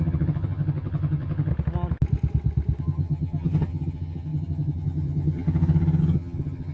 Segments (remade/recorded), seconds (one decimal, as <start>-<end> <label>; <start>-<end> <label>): 0.0-1.5 remade; 1.5-2.8 recorded; 2.8-6.7 remade